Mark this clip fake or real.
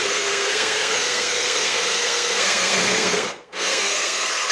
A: fake